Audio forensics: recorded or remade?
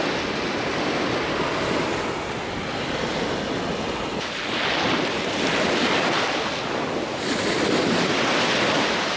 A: recorded